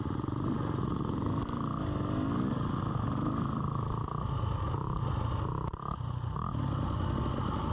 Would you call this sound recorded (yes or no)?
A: yes